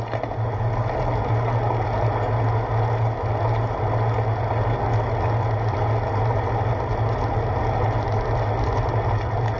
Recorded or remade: recorded